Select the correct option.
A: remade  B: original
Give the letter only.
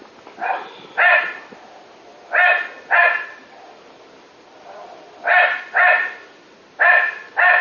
B